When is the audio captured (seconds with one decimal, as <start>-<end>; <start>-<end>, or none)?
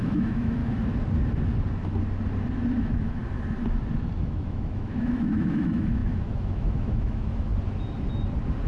0.6-2.8; 3.2-4.2; 7.5-8.7